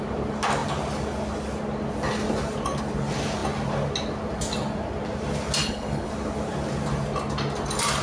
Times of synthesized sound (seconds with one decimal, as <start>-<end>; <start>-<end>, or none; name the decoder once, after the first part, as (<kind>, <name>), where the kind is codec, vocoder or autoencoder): 5.6-6.1 (codec, HILCodec)